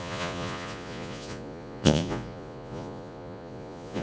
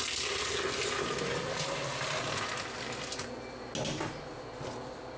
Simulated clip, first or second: first